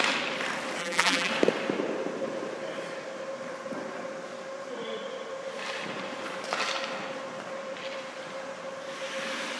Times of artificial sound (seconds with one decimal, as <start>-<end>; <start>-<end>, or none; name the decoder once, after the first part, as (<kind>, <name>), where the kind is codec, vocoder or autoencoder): 0.8-1.3 (vocoder, BigVGAN v2)